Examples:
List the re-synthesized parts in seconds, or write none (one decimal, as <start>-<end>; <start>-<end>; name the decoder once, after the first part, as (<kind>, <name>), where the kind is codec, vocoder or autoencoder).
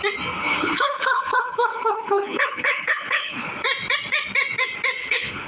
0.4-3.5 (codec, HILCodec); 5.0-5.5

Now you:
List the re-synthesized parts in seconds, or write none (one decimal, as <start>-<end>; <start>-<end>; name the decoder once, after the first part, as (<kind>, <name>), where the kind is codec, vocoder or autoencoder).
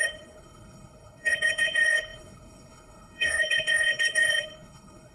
0.0-5.1 (codec, HILCodec)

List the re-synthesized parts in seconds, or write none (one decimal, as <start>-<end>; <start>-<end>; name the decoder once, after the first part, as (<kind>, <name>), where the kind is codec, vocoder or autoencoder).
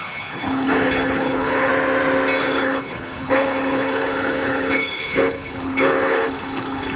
0.0-1.7 (codec, HILCodec); 2.4-7.0